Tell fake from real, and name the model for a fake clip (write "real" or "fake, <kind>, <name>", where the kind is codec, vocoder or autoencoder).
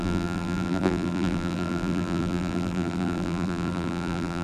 fake, vocoder, BigVGAN v2